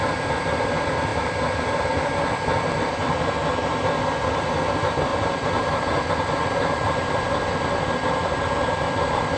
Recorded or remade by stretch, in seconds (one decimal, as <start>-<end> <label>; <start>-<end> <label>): 0.0-9.4 recorded